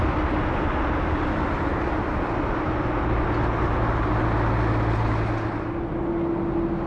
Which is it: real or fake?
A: real